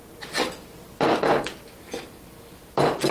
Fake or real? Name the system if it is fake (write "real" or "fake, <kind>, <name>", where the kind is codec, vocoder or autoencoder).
real